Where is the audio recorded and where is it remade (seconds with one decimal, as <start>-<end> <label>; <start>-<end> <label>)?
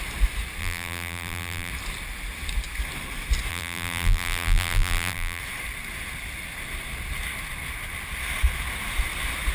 0.0-0.6 recorded; 0.6-1.7 remade; 1.7-3.5 recorded; 3.5-5.4 remade; 5.4-9.5 recorded